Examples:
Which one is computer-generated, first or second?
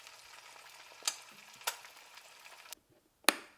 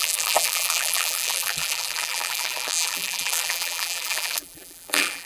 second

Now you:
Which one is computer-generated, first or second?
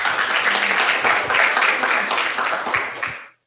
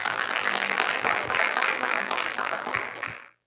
second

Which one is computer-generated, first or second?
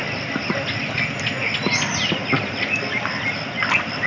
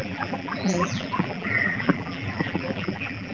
second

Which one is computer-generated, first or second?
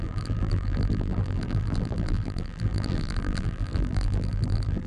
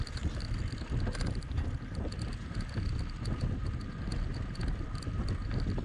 first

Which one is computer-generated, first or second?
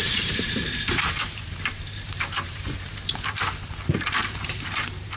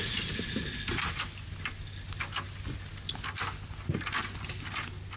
first